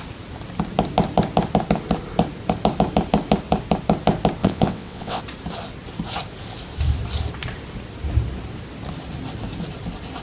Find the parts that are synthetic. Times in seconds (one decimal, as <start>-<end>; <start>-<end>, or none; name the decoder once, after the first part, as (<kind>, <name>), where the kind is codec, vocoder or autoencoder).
4.4-5.2 (vocoder, WaveNeXt)